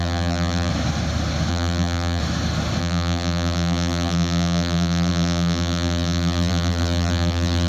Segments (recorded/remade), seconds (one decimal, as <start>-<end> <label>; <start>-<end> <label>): 0.0-0.7 remade; 0.7-1.5 recorded; 1.5-2.2 remade; 2.2-2.8 recorded; 2.8-7.7 remade